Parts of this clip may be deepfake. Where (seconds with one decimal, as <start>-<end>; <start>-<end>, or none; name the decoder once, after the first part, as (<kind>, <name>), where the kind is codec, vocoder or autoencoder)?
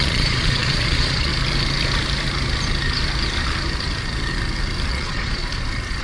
0.0-1.3 (vocoder, Vocos); 4.9-5.4